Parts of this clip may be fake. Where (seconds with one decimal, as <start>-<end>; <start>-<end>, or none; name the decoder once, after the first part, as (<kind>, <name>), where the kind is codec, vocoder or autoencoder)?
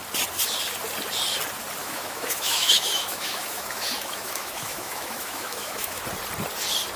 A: 1.8-6.0 (autoencoder, DAC-VAE)